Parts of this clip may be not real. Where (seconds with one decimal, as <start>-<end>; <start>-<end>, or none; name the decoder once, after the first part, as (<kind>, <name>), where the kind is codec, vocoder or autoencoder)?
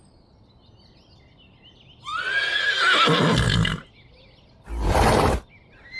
none